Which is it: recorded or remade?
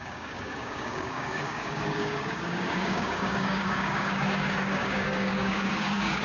remade